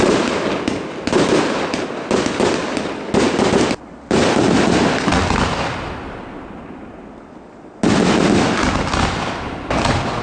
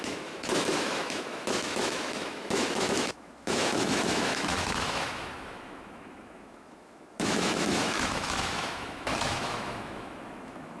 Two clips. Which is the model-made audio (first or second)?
second